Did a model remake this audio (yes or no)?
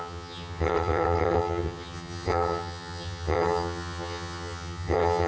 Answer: yes